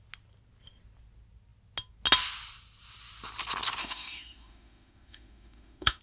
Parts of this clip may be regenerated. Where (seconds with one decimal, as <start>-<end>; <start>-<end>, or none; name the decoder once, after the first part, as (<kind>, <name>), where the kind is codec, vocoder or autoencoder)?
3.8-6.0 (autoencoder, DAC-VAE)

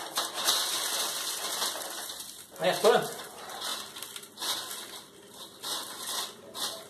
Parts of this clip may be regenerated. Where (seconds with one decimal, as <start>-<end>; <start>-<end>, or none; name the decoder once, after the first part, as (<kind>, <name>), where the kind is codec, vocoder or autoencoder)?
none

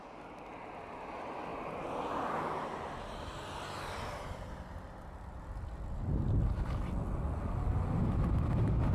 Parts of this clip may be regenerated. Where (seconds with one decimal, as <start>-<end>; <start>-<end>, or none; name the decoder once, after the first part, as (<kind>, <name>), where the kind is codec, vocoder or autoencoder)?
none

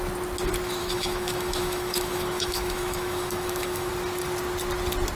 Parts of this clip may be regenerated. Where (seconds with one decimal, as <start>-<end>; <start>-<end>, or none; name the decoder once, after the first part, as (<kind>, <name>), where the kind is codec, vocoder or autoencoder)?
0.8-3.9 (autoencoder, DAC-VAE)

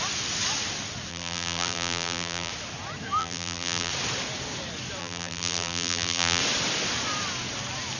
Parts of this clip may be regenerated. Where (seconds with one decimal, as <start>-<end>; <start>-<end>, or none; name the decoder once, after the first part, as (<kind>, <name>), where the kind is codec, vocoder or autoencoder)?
1.1-2.5 (vocoder, BigVGAN v2); 3.2-3.9; 5.0-6.4